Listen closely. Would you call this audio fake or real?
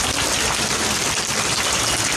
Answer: real